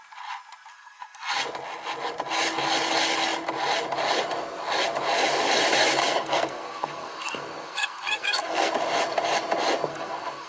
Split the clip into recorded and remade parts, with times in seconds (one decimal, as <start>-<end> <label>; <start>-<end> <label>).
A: 0.0-0.7 recorded; 0.7-1.3 remade; 1.3-6.0 recorded; 6.0-8.7 remade; 8.7-9.9 recorded; 9.9-10.5 remade